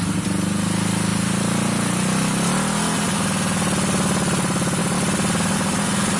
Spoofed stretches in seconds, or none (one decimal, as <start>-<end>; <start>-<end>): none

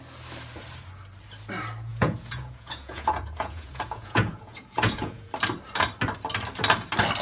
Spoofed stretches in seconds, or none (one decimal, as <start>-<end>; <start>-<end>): 1.9-5.3

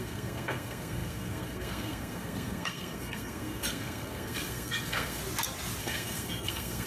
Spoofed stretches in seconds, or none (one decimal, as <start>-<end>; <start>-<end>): 0.0-5.2; 5.8-6.9

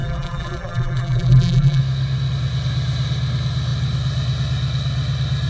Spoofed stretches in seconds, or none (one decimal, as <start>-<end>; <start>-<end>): 0.0-1.8